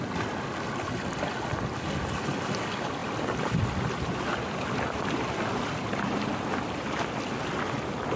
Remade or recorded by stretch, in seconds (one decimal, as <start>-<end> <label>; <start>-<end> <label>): 0.0-8.2 recorded